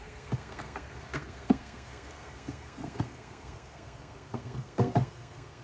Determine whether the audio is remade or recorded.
remade